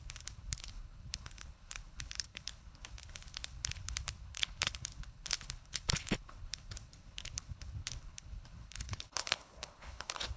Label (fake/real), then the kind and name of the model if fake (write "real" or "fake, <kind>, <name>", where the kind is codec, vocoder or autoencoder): fake, codec, HILCodec